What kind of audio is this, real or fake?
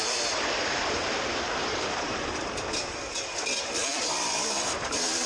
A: fake